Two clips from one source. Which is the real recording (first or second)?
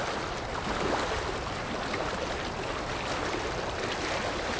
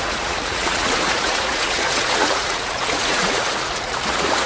first